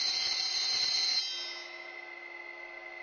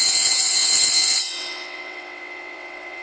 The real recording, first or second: first